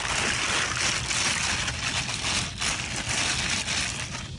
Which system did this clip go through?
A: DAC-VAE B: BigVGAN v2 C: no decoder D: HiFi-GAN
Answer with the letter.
C